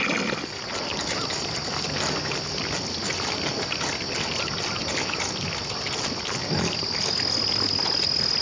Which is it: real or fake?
real